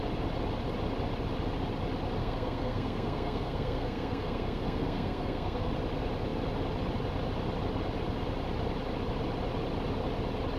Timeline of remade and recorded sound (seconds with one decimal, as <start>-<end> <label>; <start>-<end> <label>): 0.0-2.2 recorded; 2.2-5.7 remade; 5.7-10.6 recorded